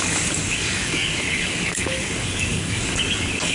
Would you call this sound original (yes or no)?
no